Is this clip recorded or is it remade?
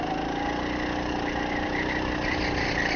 recorded